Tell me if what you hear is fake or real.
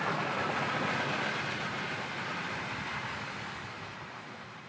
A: real